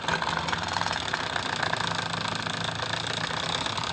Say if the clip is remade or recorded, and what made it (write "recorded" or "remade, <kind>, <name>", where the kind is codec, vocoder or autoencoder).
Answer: recorded